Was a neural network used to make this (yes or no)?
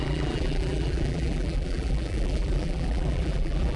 yes